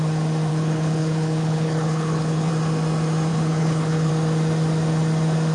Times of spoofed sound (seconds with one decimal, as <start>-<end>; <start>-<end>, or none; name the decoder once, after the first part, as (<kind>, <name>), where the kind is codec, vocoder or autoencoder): 0.5-2.5 (codec, HILCodec); 3.3-4.1